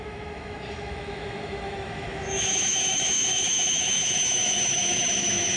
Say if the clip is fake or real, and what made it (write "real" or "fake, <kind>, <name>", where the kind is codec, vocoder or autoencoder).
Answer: fake, autoencoder, DAC-VAE